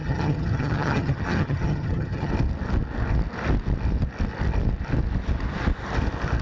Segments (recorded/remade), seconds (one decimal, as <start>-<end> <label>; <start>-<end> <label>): 0.0-2.3 remade; 2.3-6.4 recorded